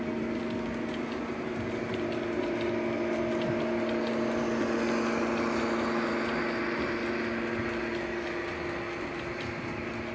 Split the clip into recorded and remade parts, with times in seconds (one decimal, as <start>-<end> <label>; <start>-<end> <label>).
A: 0.0-10.1 recorded